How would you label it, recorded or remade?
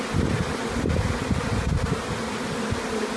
recorded